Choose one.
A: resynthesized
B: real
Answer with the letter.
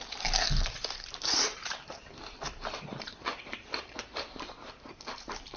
A